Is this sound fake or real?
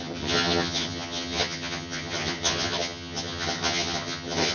fake